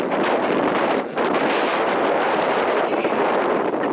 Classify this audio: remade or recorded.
remade